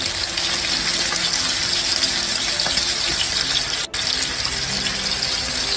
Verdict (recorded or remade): recorded